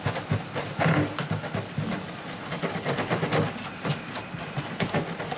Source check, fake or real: real